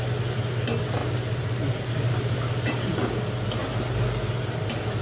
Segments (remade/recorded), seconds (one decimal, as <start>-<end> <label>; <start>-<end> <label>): 0.0-1.0 recorded; 1.0-3.2 remade; 3.2-5.0 recorded